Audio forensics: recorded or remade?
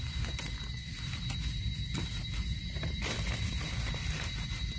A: recorded